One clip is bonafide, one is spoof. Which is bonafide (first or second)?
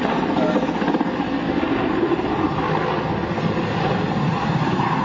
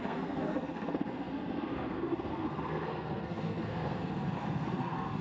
first